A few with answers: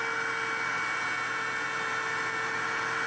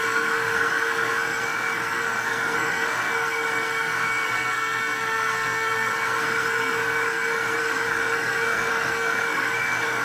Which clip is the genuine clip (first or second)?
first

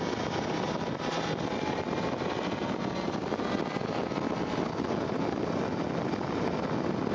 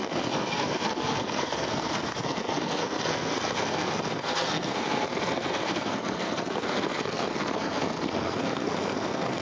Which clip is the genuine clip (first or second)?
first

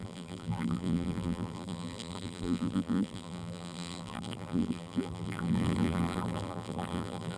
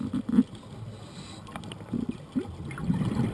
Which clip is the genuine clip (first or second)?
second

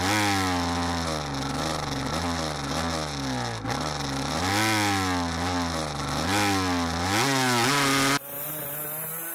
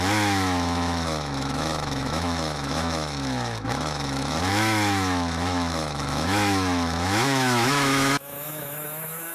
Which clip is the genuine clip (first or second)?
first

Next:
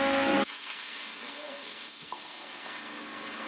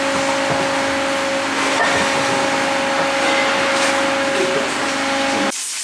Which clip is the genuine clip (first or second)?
second